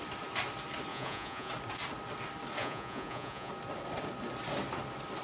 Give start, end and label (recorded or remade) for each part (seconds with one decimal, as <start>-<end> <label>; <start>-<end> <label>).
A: 0.0-0.9 recorded; 0.9-1.5 remade; 1.5-2.6 recorded; 2.6-3.5 remade; 3.5-5.2 recorded